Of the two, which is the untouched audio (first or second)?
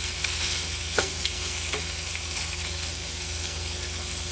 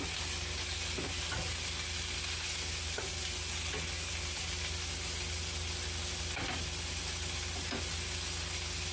second